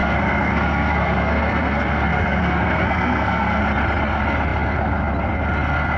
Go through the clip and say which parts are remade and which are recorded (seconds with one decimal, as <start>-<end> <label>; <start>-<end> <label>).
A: 0.0-3.6 remade; 3.6-6.0 recorded